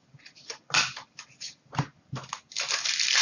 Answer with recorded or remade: recorded